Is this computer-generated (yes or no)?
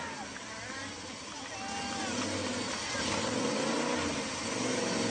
no